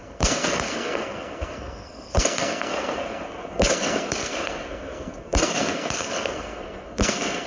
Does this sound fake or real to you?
fake